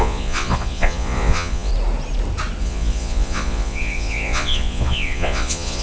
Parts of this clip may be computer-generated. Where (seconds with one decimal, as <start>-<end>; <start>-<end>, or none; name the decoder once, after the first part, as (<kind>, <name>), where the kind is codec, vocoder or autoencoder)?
0.0-1.7 (vocoder, Vocos); 2.6-5.8